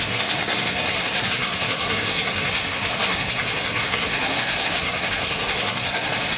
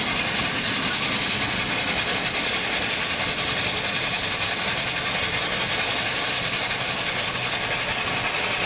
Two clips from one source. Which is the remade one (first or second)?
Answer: first